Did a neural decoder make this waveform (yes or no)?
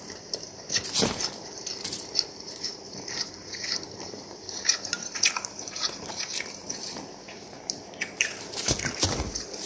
yes